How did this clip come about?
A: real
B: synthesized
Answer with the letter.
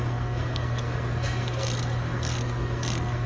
B